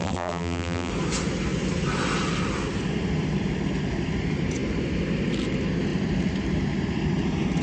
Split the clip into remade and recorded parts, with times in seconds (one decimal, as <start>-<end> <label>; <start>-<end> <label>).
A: 0.0-0.9 remade; 0.9-7.6 recorded